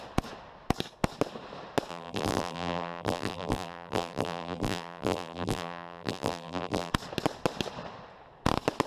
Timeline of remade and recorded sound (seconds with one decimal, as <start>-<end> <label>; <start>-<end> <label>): 0.0-1.9 recorded; 1.9-6.9 remade; 6.9-8.9 recorded